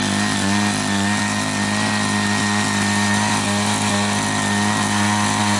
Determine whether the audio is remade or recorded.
recorded